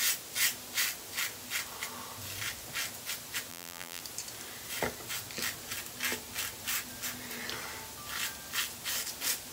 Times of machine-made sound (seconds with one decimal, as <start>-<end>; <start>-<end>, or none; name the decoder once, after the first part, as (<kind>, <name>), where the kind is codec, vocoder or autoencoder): 3.5-4.0 (vocoder, BigVGAN v2)